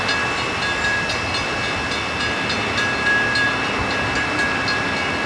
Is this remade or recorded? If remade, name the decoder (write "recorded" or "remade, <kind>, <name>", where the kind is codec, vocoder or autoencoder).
recorded